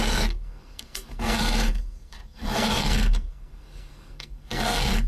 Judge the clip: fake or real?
fake